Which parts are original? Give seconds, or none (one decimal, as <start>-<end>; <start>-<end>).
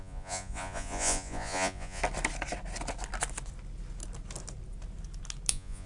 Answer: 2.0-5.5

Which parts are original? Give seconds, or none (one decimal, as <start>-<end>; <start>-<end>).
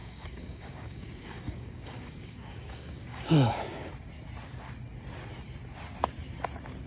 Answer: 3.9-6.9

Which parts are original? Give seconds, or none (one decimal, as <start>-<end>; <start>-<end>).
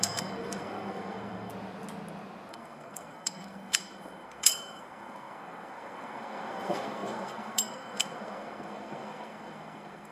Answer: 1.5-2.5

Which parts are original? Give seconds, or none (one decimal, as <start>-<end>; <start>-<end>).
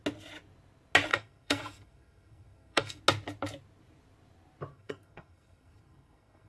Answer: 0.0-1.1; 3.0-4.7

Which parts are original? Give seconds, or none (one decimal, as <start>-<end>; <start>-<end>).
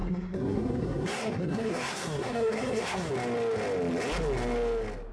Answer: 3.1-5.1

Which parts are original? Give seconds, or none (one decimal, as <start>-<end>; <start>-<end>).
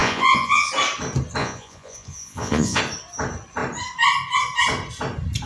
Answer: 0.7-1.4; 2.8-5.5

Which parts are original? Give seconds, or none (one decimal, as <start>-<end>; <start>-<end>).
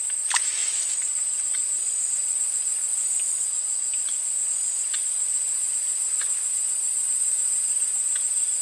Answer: 0.0-5.3; 6.6-8.6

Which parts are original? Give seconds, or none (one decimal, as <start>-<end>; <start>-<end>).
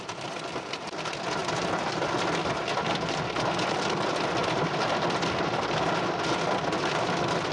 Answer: 0.0-7.5